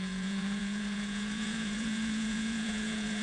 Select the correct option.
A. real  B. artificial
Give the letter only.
B